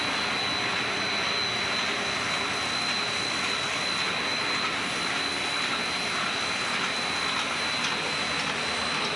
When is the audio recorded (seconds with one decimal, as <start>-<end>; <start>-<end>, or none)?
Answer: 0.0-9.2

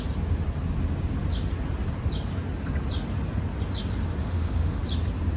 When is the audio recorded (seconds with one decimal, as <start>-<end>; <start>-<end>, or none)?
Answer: 0.0-4.2; 4.8-5.4

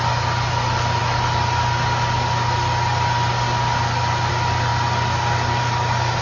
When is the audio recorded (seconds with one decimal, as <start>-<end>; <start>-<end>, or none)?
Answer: 0.0-6.2

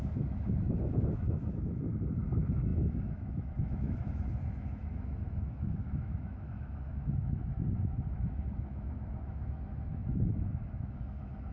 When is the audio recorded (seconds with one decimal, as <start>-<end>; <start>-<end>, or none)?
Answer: none